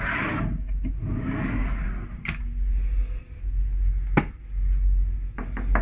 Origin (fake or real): real